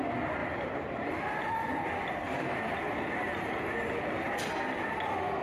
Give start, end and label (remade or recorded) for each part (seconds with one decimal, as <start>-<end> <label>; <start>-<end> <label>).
0.0-0.4 recorded; 0.4-1.7 remade; 1.7-5.4 recorded